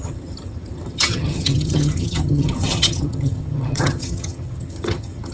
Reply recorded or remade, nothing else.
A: remade